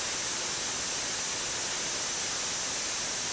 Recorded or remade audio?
recorded